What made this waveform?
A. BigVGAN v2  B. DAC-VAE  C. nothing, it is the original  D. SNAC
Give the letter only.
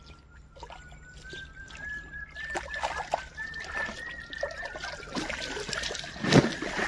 C